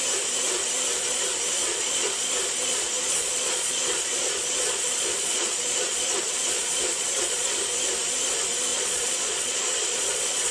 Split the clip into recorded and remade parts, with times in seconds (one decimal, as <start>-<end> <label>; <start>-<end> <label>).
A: 0.0-1.6 recorded; 1.6-2.3 remade; 2.3-2.7 recorded; 2.7-7.6 remade; 7.6-8.7 recorded; 8.7-10.5 remade